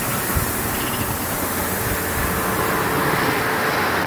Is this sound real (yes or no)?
yes